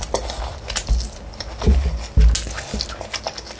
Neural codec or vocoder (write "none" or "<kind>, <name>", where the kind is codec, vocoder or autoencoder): none